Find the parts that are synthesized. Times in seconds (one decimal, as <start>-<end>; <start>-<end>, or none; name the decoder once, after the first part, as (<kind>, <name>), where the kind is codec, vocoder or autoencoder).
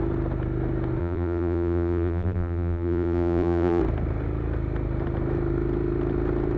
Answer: 1.0-3.8 (vocoder, BigVGAN v2)